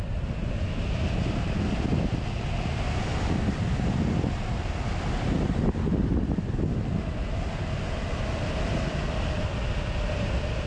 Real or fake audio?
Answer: real